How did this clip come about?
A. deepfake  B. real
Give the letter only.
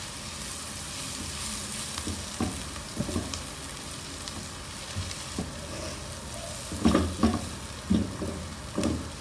B